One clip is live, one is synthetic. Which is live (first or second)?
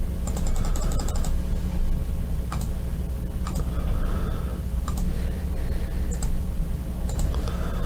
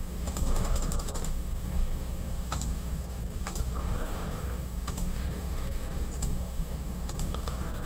first